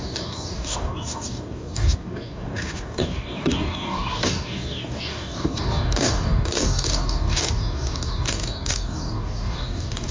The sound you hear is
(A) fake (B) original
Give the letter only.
A